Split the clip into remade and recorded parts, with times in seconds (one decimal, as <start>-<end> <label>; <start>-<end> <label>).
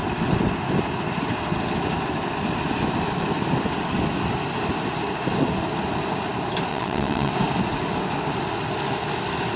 0.0-6.7 recorded; 6.7-7.3 remade; 7.3-9.6 recorded